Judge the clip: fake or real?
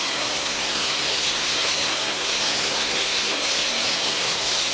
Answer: fake